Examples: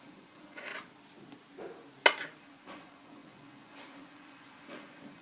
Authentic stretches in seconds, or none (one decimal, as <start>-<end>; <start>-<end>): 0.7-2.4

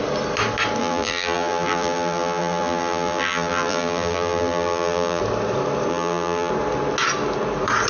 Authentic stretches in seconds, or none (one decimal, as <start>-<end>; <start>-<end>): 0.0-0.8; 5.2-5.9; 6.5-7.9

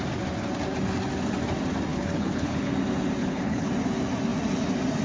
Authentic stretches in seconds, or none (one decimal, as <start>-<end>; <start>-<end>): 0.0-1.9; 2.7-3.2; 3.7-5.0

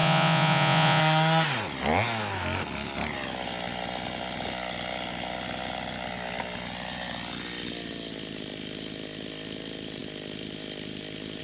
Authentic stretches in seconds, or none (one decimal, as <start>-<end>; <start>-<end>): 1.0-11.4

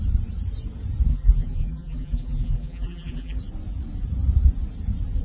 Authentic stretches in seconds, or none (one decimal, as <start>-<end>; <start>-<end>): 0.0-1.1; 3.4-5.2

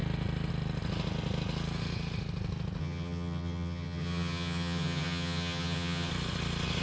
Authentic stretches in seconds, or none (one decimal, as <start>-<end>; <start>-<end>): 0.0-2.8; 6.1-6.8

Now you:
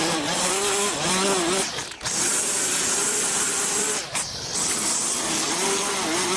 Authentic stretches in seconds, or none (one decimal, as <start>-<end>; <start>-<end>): 0.0-6.4